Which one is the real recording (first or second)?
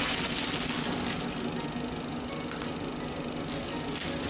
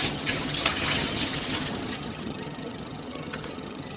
first